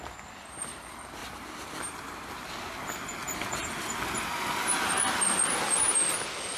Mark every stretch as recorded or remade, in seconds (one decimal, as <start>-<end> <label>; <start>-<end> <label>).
0.0-1.2 recorded; 1.2-2.3 remade; 2.3-6.6 recorded